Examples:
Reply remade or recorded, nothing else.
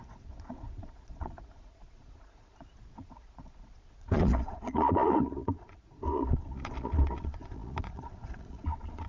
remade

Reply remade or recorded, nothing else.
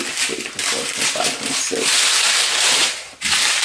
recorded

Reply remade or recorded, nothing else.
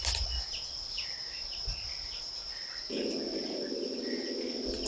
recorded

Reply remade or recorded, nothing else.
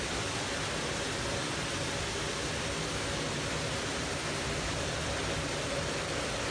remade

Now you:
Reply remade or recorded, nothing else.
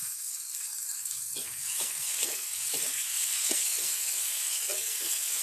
remade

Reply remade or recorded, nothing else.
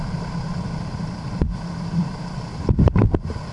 remade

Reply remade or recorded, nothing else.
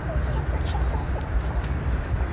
recorded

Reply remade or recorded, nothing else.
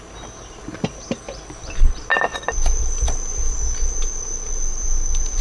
recorded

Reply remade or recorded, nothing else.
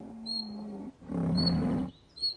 recorded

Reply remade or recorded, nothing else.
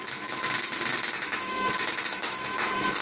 remade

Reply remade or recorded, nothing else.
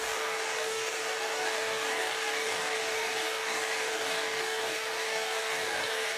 remade